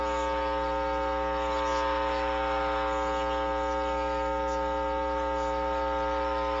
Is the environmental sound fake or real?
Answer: real